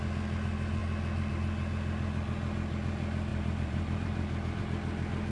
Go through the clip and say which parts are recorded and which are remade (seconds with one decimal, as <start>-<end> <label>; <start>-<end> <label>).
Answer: 0.0-3.3 recorded; 3.3-4.6 remade; 4.6-5.3 recorded